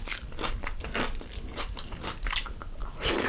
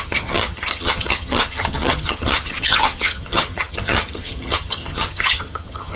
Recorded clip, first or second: first